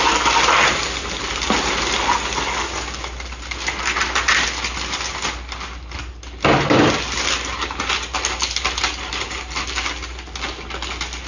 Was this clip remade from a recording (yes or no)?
no